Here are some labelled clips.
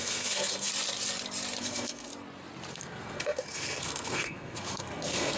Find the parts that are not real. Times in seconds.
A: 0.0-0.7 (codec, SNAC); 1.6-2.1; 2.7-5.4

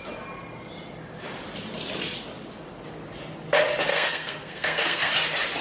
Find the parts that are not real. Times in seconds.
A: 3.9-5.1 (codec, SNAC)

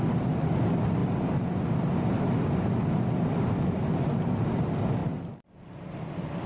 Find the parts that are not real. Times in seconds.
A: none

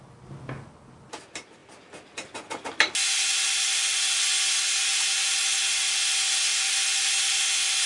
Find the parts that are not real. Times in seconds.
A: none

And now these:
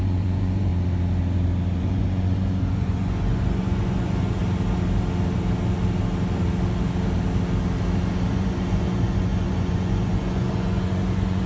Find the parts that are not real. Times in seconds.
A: 0.0-0.7 (vocoder, Vocos); 1.8-4.4; 8.3-11.5

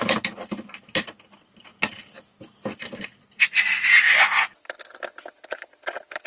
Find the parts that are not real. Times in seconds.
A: none

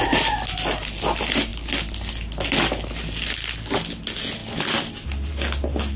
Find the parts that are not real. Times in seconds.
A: none